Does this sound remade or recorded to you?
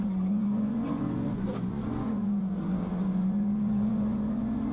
remade